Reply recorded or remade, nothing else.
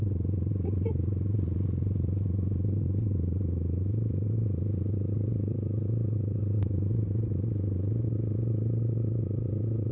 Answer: remade